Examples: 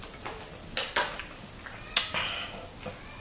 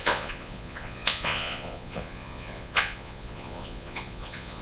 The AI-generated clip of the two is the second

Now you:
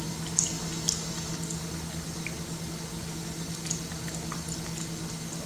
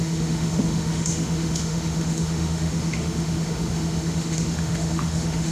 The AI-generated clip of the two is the second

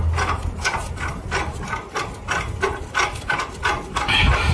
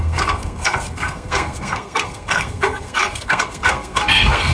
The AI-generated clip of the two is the second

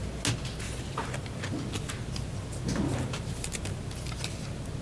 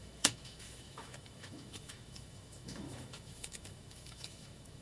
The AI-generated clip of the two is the second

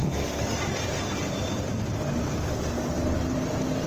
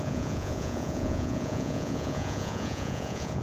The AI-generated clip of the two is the second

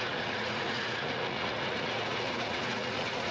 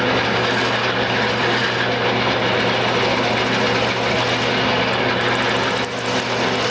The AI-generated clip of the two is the first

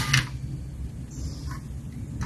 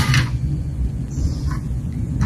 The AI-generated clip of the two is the second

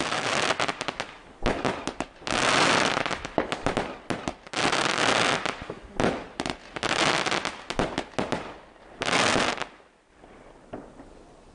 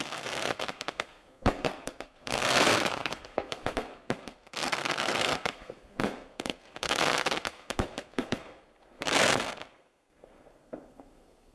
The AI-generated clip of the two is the second